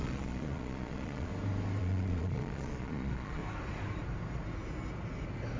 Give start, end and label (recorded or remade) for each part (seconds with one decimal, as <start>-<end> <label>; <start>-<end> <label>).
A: 0.0-1.3 remade; 1.3-1.8 recorded; 1.8-3.4 remade; 3.4-5.6 recorded